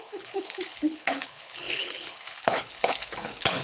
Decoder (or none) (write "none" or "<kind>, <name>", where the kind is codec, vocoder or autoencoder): codec, HILCodec